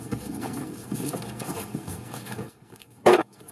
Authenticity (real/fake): fake